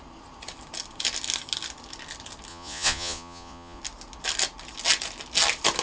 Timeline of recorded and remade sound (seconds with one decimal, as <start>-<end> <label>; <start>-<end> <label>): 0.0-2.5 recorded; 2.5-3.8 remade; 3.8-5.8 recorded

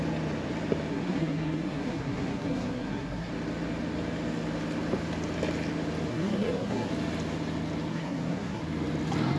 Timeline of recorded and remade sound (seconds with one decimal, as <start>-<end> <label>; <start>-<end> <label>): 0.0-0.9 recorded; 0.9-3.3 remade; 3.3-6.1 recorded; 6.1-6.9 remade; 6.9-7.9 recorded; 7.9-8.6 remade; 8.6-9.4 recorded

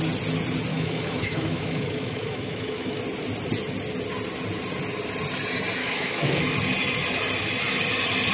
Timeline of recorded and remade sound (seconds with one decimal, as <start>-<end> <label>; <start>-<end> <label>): 0.0-0.7 recorded; 0.7-3.0 remade; 3.0-5.8 recorded; 5.8-6.4 remade; 6.4-8.3 recorded